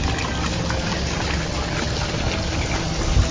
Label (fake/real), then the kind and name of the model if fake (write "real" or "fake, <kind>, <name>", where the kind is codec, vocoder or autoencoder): real